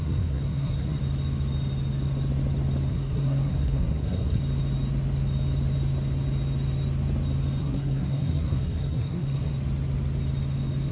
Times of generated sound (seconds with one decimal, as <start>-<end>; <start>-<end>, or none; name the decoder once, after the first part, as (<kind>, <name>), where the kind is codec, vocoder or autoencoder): 0.0-1.0 (codec, SNAC); 2.9-4.4; 7.6-9.5